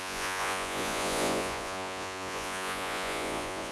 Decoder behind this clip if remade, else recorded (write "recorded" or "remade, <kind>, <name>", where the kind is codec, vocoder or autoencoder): remade, vocoder, Vocos